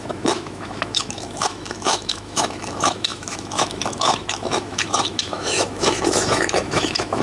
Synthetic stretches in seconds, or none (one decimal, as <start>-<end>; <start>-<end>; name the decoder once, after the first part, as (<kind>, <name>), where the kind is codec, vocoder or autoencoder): 0.0-7.2 (autoencoder, DAC-VAE)